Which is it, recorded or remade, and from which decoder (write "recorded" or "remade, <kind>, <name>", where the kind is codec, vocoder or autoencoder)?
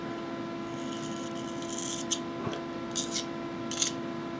recorded